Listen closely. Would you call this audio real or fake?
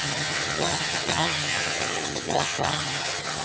fake